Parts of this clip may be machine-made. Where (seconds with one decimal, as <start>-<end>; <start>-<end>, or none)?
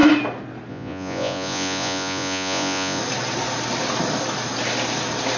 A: 0.7-3.0